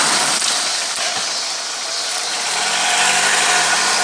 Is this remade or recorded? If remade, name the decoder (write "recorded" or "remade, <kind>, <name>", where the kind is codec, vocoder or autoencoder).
recorded